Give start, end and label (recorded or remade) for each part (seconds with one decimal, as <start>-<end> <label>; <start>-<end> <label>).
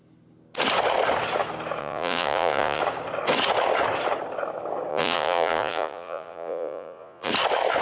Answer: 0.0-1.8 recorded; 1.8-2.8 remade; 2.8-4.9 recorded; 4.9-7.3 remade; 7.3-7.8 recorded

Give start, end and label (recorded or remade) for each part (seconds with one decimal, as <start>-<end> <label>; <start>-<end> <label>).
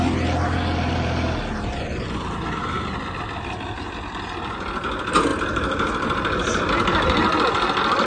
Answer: 0.0-8.1 recorded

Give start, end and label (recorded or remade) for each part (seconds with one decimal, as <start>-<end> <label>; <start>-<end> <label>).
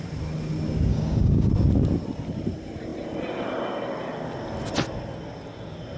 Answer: 0.0-0.9 recorded; 0.9-1.5 remade; 1.5-6.0 recorded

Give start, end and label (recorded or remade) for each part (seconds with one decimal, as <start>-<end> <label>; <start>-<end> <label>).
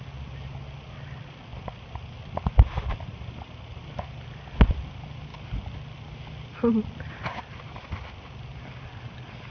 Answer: 0.0-9.5 recorded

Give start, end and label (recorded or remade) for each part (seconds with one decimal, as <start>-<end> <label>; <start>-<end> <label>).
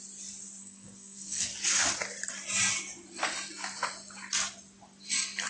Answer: 0.0-0.6 recorded; 0.6-1.5 remade; 1.5-5.5 recorded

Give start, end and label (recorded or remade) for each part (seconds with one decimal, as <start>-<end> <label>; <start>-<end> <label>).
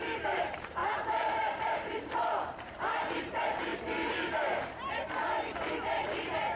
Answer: 0.0-6.6 remade